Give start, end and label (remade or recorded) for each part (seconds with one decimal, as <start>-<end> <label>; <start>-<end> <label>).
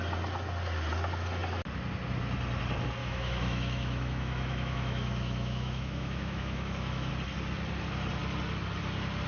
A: 0.0-3.0 recorded; 3.0-7.1 remade; 7.1-9.3 recorded